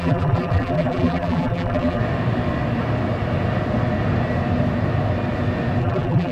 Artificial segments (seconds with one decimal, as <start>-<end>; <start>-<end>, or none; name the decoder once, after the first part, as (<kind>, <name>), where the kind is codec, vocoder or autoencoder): 0.0-2.0 (vocoder, BigVGAN v2); 5.8-6.3